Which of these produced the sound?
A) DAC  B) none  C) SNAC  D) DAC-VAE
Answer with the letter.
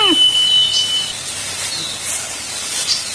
B